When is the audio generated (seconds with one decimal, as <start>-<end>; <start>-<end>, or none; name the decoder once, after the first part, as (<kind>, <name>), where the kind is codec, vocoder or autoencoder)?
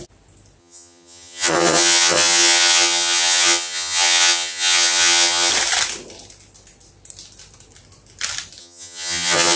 0.6-5.5 (vocoder, HiFi-GAN); 8.6-9.6